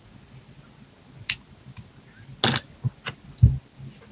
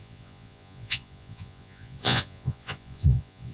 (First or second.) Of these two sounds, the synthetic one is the second